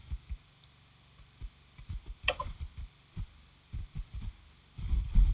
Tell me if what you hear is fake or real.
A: real